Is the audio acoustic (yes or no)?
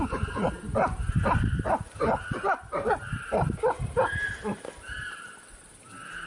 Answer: yes